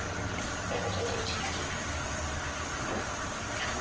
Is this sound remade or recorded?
recorded